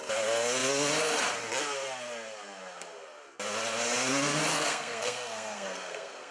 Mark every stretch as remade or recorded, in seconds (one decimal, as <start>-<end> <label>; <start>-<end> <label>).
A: 0.0-4.5 recorded; 4.5-6.3 remade